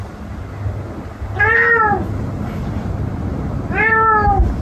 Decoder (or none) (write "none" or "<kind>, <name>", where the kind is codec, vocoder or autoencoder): none